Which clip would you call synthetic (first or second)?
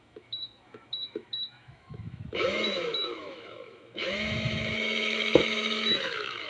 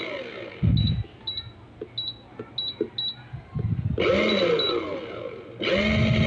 first